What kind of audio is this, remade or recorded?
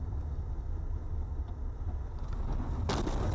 recorded